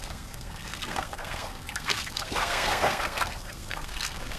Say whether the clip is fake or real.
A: fake